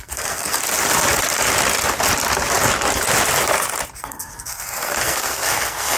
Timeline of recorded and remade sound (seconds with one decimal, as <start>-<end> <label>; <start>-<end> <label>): 0.0-0.6 remade; 0.6-3.9 recorded; 3.9-6.0 remade